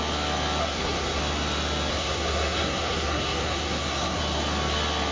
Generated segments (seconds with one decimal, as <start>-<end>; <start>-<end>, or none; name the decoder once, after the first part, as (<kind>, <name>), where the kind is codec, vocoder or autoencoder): 0.6-1.2 (codec, SNAC); 1.9-4.2